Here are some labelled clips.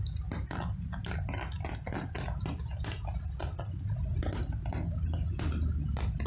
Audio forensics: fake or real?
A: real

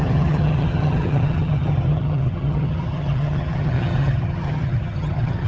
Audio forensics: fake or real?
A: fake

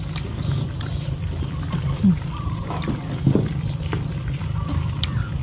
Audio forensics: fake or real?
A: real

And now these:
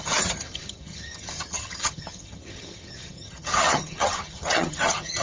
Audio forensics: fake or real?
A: fake